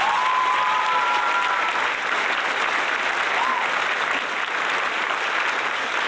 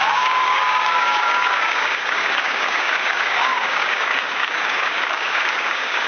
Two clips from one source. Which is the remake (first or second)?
second